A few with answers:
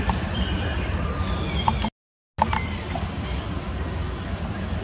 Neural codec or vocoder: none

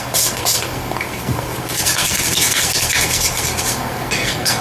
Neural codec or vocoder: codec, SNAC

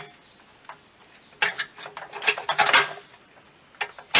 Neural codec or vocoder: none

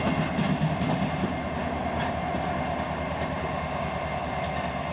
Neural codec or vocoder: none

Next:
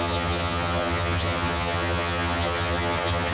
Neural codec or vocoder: vocoder, HiFi-GAN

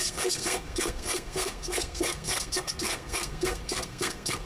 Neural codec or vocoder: codec, SNAC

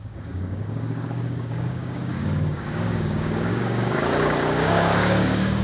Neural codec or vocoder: codec, DAC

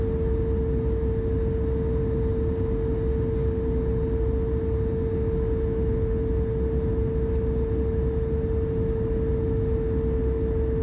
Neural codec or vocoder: none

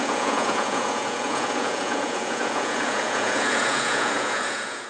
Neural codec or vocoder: vocoder, Vocos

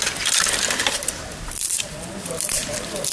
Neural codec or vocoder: vocoder, BigVGAN v2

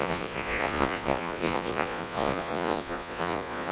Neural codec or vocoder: vocoder, Vocos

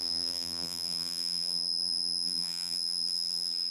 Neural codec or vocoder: vocoder, BigVGAN v2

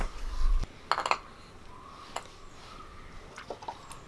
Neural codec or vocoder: none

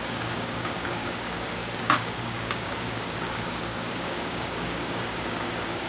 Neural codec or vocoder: codec, DAC